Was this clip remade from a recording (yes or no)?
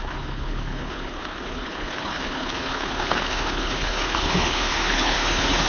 yes